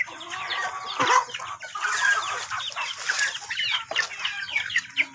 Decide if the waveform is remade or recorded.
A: recorded